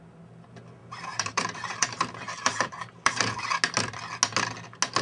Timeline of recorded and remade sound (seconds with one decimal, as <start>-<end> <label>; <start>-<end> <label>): 0.0-0.8 recorded; 0.8-3.4 remade; 3.4-5.0 recorded